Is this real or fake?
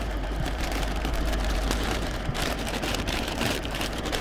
fake